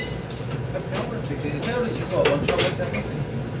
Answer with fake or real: real